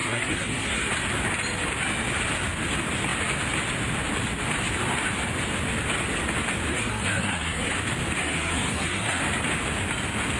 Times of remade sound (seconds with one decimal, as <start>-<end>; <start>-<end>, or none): 0.0-0.9; 6.7-7.7; 8.2-9.2